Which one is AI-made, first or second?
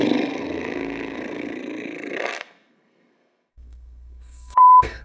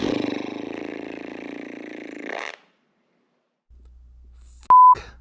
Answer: first